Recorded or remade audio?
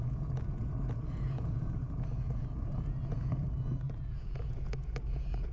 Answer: remade